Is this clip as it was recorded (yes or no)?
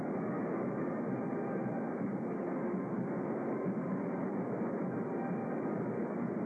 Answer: yes